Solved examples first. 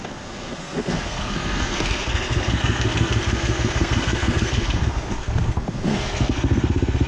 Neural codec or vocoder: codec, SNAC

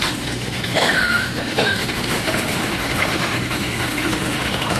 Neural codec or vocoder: autoencoder, DAC-VAE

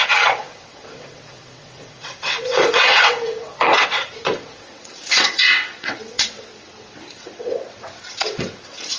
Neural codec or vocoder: vocoder, WaveNeXt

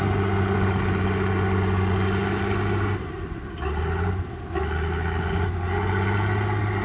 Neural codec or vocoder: none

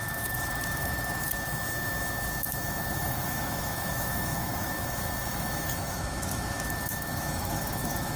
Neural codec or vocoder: autoencoder, DAC-VAE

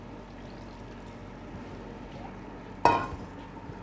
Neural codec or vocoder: none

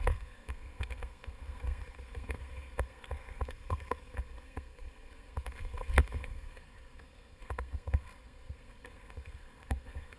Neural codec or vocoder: codec, SNAC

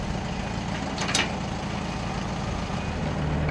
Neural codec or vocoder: none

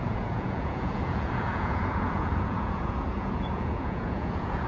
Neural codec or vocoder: vocoder, Vocos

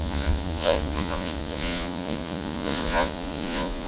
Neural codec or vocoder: vocoder, Vocos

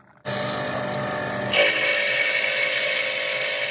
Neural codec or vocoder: none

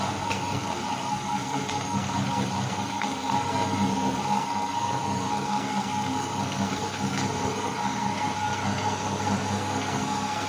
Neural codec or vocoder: codec, SNAC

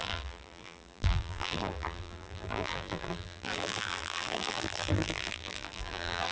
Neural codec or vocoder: vocoder, BigVGAN v2